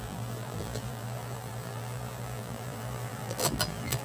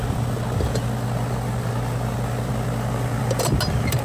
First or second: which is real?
second